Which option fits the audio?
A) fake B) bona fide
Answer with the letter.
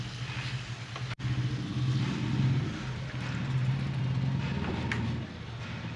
B